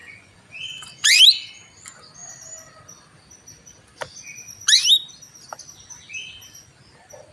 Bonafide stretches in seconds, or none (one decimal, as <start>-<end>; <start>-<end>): 1.2-7.3